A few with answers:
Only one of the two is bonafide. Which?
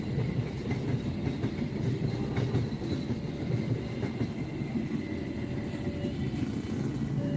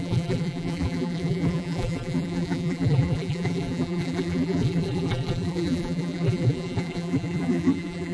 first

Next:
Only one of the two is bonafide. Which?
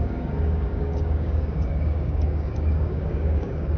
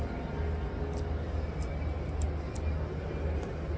second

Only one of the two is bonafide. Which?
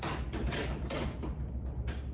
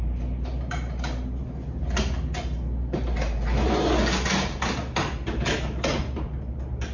second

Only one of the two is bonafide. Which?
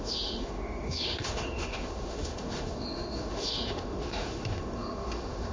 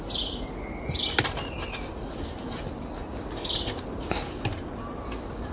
second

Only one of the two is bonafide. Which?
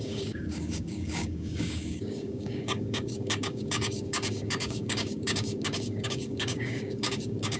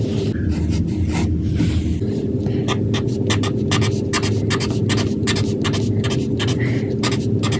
second